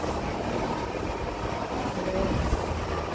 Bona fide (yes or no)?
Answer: yes